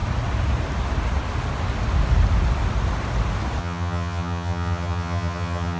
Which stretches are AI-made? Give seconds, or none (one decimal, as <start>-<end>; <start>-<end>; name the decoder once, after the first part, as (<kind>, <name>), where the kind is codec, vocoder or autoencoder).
3.6-5.8 (vocoder, HiFi-GAN)

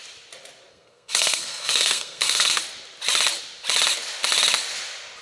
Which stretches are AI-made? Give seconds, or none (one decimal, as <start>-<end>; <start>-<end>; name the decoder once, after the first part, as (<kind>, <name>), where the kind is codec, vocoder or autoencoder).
0.7-2.6 (codec, SNAC)

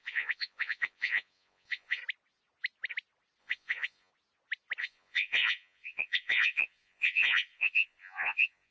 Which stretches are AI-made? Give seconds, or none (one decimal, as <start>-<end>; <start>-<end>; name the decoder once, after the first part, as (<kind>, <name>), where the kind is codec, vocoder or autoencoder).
0.0-2.0 (vocoder, Vocos); 3.4-4.1; 4.8-8.7

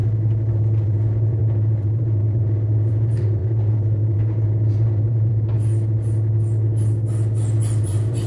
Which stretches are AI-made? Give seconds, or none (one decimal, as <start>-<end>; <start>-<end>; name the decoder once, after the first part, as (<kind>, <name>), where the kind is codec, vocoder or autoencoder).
0.5-5.3 (vocoder, BigVGAN v2); 7.8-8.3